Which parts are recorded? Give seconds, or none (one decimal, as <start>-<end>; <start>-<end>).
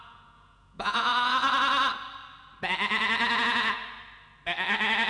1.1-3.4; 3.8-5.1